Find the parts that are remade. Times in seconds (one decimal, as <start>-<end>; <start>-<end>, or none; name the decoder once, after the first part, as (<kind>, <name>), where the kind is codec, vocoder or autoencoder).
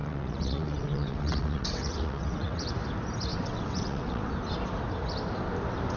0.0-2.8 (vocoder, WaveNeXt); 3.3-4.3